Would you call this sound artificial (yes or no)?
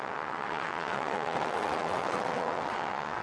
yes